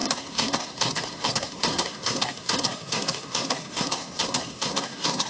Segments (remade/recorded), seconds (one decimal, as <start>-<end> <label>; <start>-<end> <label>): 0.0-5.3 remade